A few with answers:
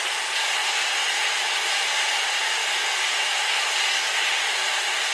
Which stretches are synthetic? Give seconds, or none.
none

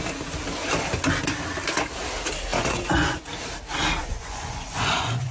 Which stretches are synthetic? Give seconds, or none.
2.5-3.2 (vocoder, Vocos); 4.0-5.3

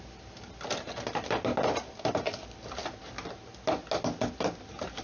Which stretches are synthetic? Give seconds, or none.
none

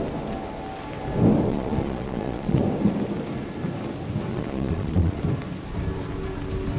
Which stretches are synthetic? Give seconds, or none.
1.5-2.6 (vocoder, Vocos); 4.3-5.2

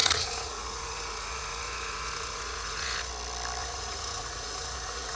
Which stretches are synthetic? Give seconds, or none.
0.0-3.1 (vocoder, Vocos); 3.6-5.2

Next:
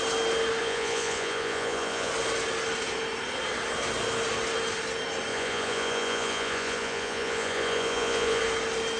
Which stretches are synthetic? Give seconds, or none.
0.6-2.1 (vocoder, Vocos); 5.3-8.4

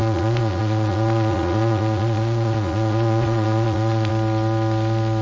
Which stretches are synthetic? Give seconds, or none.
0.0-4.1 (vocoder, Vocos)

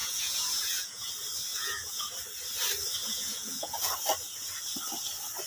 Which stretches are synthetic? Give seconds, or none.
0.0-1.1 (vocoder, Vocos); 1.5-2.1; 3.0-3.9